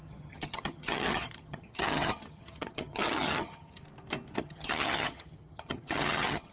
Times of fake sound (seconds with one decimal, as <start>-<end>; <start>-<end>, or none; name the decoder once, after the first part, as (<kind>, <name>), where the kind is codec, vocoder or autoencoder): 0.0-3.8 (vocoder, HiFi-GAN); 4.4-6.5